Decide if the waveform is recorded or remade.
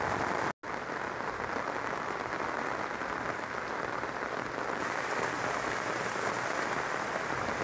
recorded